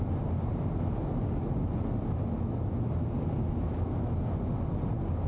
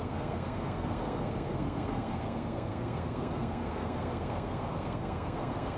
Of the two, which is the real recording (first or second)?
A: first